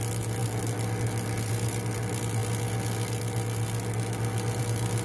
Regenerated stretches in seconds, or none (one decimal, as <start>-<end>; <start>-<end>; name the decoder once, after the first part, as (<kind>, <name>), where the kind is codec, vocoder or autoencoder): none